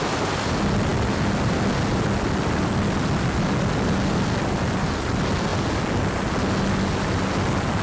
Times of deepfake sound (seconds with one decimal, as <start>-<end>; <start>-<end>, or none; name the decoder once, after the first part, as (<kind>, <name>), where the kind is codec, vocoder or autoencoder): none